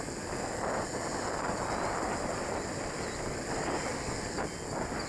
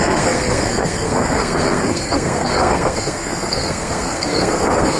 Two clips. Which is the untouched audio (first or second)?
first